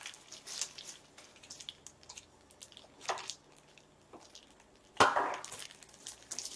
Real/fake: real